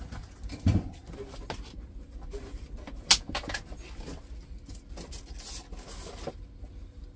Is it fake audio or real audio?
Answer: real